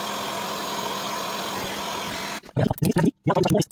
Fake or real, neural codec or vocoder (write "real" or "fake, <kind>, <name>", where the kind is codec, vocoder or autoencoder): real